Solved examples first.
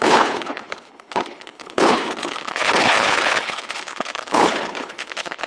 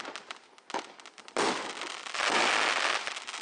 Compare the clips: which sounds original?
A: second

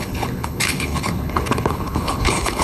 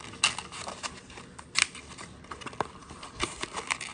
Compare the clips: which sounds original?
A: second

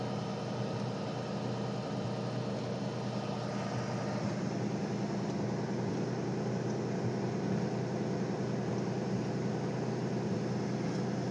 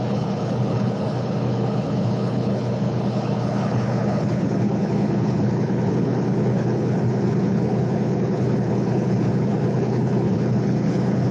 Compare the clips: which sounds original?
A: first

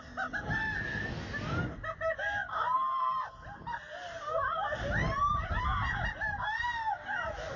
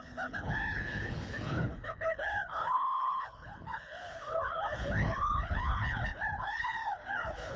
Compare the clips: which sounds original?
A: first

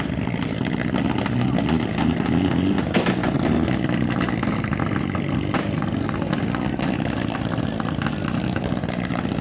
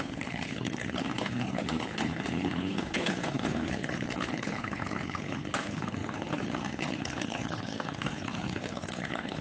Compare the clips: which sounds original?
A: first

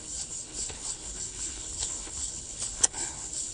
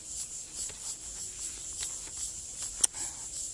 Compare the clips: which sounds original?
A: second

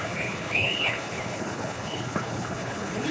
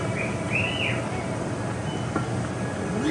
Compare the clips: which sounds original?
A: second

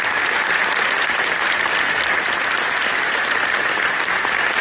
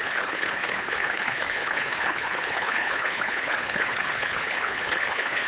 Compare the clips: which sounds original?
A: first